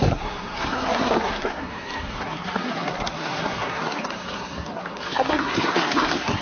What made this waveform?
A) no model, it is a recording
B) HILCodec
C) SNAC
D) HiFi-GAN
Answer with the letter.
C